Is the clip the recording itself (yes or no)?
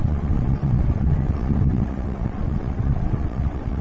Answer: no